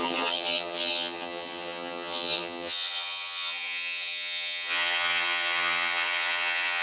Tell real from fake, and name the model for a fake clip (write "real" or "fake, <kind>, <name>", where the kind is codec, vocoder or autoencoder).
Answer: fake, vocoder, HiFi-GAN